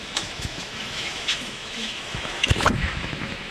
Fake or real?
fake